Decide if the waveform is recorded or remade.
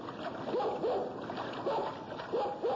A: recorded